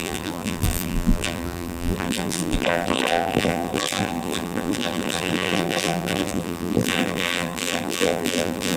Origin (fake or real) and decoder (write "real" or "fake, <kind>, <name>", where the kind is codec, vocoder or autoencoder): fake, vocoder, BigVGAN v2